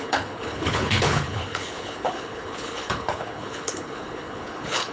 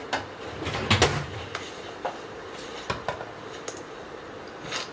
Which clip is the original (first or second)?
second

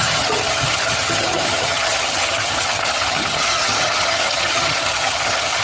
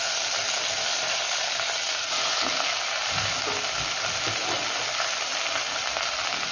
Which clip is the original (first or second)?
second